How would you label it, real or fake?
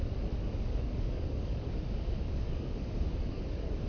fake